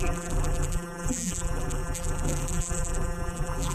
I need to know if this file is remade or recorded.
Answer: remade